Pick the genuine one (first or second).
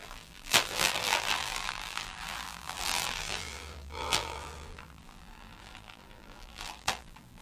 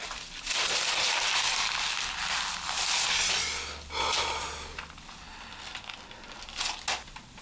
second